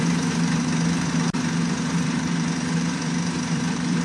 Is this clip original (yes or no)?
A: no